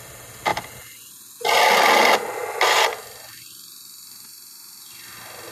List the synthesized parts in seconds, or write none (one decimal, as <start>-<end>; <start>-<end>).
none